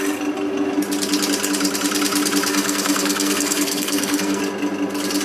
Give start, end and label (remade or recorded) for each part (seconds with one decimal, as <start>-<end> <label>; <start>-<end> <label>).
0.0-2.5 recorded; 2.5-4.4 remade; 4.4-5.2 recorded